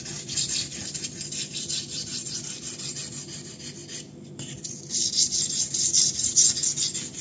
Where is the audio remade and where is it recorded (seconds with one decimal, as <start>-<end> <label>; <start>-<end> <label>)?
0.0-7.2 recorded